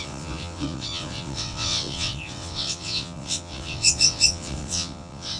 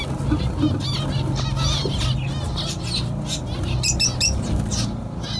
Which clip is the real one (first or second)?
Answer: second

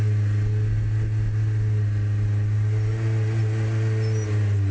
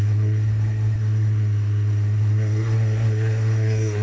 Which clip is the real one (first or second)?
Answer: first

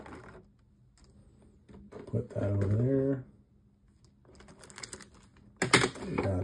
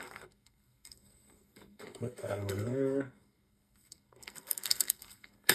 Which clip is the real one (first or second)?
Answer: first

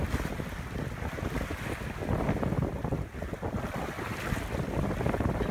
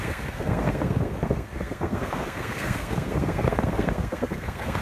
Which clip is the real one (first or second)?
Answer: first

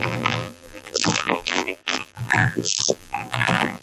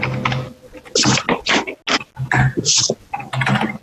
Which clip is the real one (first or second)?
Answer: second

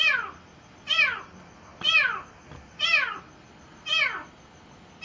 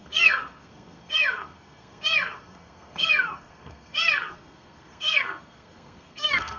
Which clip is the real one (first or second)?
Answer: first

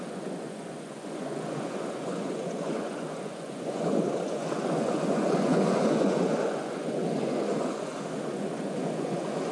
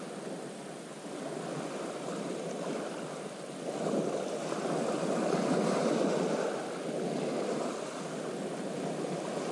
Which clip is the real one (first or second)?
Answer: second